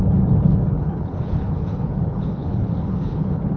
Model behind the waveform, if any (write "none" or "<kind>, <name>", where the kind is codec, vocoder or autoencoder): codec, HILCodec